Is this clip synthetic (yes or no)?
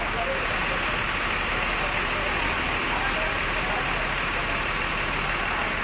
no